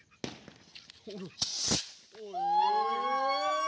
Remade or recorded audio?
recorded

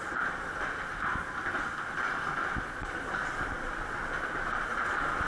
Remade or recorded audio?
remade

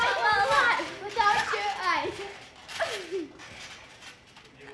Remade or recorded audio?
recorded